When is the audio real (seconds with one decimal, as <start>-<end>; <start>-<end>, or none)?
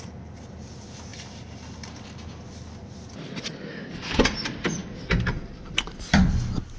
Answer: 0.0-6.8